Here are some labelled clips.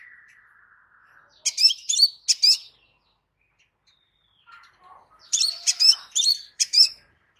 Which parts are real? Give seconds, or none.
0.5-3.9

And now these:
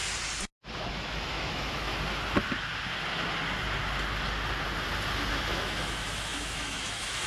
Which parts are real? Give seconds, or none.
0.0-0.9; 1.9-5.3

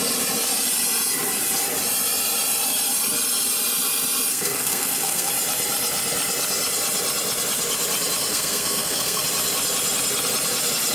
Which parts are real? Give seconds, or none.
0.0-4.3; 5.3-8.3; 9.2-10.9

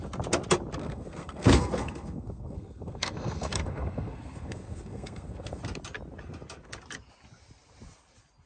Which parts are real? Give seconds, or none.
0.0-0.8; 5.6-8.5

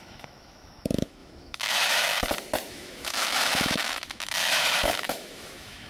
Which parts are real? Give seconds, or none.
2.1-2.7

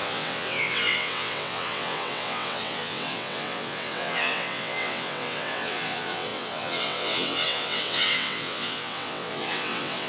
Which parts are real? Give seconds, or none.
none

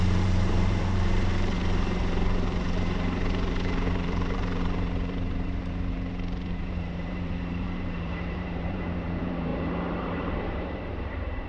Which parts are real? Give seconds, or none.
none